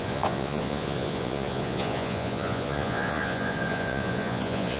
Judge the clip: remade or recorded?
remade